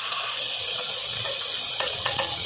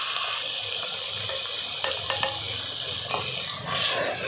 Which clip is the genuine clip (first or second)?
second